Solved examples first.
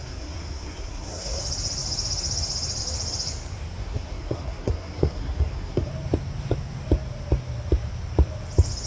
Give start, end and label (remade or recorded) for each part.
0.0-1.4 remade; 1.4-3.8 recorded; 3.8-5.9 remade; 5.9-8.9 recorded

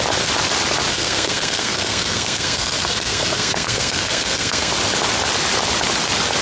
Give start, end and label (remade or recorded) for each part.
0.0-0.9 recorded; 0.9-4.7 remade; 4.7-6.4 recorded

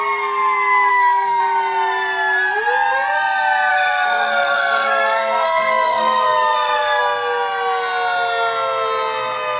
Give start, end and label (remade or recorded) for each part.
0.0-0.9 recorded; 0.9-1.4 remade; 1.4-3.7 recorded; 3.7-7.0 remade; 7.0-9.6 recorded

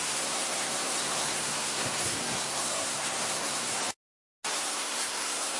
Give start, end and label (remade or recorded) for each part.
0.0-3.8 remade; 3.8-4.5 recorded; 4.5-5.6 remade